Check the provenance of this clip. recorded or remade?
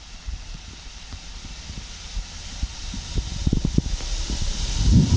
recorded